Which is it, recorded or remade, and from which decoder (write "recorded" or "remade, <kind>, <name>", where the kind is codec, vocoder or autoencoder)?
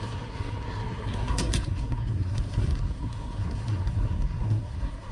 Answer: remade, codec, SNAC